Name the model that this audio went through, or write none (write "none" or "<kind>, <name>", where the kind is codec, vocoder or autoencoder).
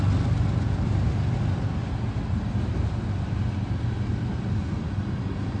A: none